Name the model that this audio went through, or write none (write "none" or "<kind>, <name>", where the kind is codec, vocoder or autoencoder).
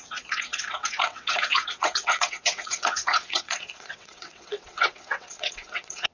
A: vocoder, WaveNeXt